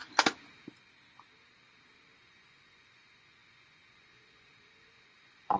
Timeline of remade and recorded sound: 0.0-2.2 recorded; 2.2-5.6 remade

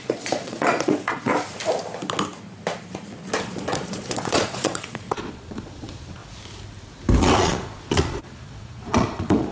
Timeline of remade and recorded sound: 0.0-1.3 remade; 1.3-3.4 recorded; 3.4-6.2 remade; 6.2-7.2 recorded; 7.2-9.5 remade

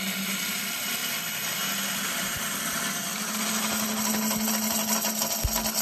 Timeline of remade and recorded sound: 0.0-5.8 recorded

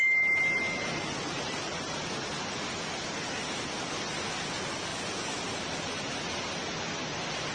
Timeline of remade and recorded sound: 0.0-4.9 recorded; 4.9-5.4 remade; 5.4-7.5 recorded

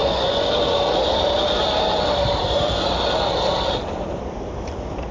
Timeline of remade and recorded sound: 0.0-0.5 remade; 0.5-5.1 recorded